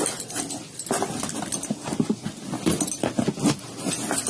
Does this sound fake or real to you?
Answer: real